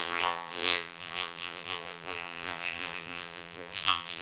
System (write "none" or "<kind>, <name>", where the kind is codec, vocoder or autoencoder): vocoder, BigVGAN v2